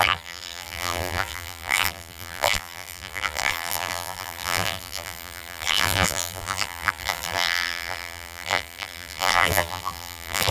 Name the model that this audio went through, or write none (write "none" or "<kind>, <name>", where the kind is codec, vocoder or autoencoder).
vocoder, BigVGAN v2